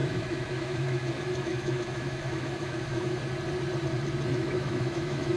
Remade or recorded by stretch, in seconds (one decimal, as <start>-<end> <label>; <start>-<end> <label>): 0.0-3.2 remade; 3.2-4.3 recorded; 4.3-5.4 remade